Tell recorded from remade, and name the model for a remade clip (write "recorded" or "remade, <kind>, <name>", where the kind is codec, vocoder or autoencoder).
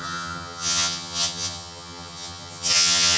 remade, vocoder, HiFi-GAN